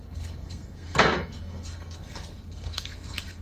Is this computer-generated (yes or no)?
yes